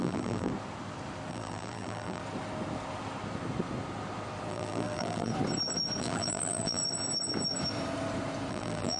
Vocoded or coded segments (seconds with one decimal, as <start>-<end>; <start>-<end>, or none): 0.0-0.5; 1.3-2.2; 4.5-5.3; 6.0-6.8; 8.5-9.0